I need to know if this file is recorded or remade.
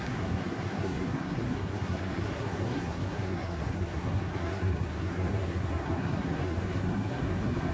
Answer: remade